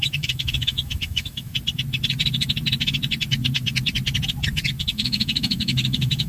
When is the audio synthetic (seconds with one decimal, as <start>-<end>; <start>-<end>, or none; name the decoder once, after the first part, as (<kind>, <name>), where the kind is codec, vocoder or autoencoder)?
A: 0.0-1.5 (autoencoder, DAC-VAE); 4.8-6.3